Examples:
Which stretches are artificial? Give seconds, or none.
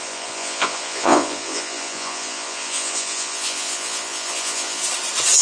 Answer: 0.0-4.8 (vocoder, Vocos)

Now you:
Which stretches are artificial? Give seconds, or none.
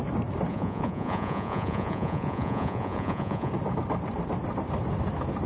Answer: 0.5-3.5 (vocoder, Vocos)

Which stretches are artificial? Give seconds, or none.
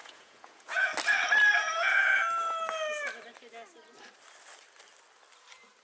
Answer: 0.0-0.9 (vocoder, Vocos); 1.6-2.2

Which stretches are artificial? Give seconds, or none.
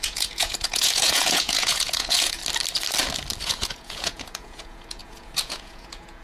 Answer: 0.0-2.4 (vocoder, Vocos); 3.4-6.2